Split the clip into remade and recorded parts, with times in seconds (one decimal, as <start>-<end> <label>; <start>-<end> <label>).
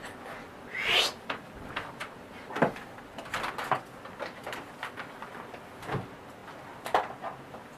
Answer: 0.0-2.0 recorded; 2.0-2.5 remade; 2.5-7.8 recorded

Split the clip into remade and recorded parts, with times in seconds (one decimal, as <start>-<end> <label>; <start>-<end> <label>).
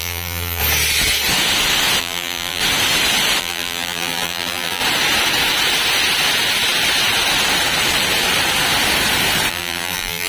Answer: 0.0-0.6 remade; 0.6-2.0 recorded; 2.0-2.6 remade; 2.6-3.4 recorded; 3.4-4.8 remade; 4.8-9.5 recorded; 9.5-10.3 remade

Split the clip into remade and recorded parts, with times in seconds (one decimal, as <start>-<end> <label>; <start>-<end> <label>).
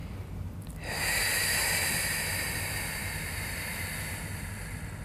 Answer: 0.0-1.4 remade; 1.4-5.0 recorded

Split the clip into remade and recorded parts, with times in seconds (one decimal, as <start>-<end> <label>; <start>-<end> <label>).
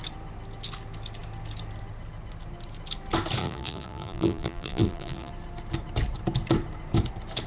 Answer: 0.0-3.4 recorded; 3.4-5.3 remade; 5.3-7.5 recorded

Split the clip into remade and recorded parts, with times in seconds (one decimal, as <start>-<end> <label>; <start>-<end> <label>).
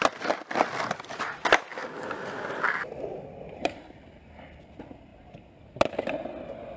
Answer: 0.0-6.8 recorded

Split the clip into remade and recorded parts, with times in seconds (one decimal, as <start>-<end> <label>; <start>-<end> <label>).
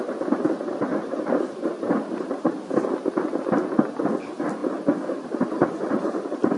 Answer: 0.0-0.9 recorded; 0.9-2.8 remade; 2.8-6.6 recorded